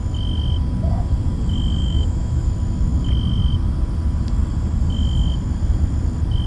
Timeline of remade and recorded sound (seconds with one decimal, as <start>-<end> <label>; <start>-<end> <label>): 0.0-1.8 recorded; 1.8-2.5 remade; 2.5-6.5 recorded